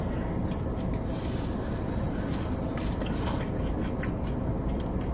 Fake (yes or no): no